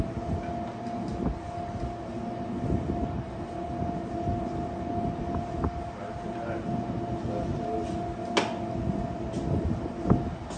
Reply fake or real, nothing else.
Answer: real